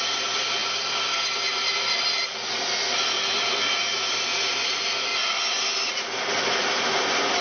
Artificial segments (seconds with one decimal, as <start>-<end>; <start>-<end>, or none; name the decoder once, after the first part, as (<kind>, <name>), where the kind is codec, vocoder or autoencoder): none